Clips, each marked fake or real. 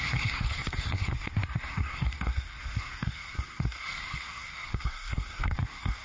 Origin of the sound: fake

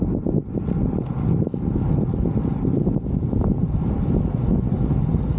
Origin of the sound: real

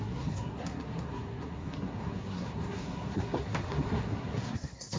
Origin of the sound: fake